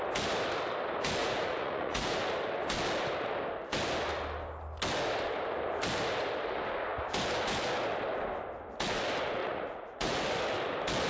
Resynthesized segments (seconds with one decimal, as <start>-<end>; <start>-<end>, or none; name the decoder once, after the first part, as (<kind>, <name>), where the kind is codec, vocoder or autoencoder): 1.2-2.2 (vocoder, Vocos); 9.4-10.2